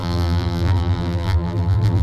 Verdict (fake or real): fake